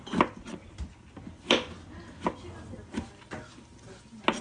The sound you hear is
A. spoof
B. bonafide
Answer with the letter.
B